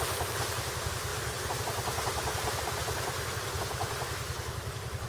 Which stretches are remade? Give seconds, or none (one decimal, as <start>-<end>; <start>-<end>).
none